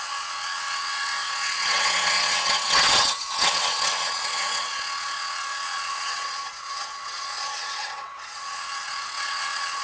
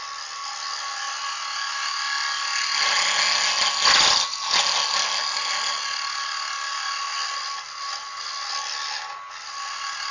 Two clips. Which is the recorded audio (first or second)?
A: second